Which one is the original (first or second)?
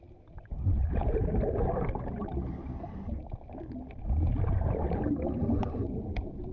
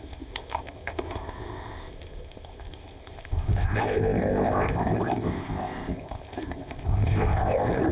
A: first